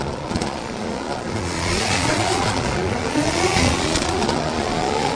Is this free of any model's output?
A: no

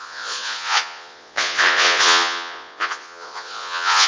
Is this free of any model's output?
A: no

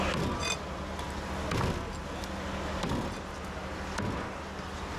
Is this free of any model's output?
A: yes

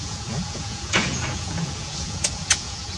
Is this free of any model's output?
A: no